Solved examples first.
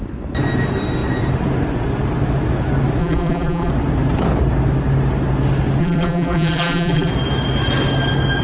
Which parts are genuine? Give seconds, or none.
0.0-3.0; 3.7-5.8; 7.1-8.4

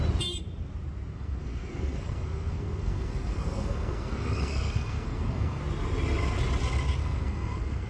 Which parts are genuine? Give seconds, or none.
0.0-1.1; 5.6-7.0

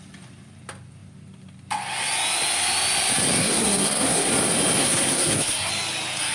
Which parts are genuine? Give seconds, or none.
0.0-3.4; 4.3-4.8; 5.7-6.3